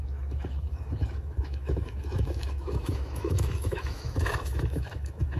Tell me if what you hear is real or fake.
fake